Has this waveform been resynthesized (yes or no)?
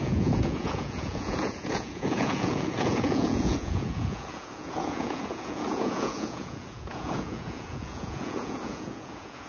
yes